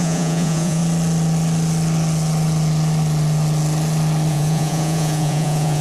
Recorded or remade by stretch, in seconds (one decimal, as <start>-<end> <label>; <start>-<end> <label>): 0.0-0.8 remade; 0.8-4.3 recorded; 4.3-5.8 remade